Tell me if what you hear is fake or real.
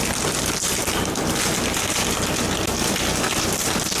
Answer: real